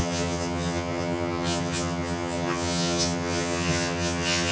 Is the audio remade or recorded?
remade